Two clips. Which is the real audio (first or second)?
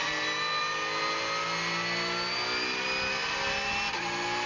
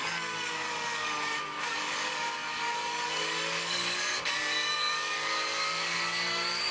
first